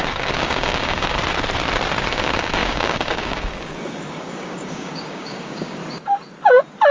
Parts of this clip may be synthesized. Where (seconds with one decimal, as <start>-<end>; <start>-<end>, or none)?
0.0-1.2; 2.1-5.8